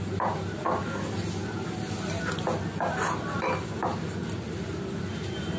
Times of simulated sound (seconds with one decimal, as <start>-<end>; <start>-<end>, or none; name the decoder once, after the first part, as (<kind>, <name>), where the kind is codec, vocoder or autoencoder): none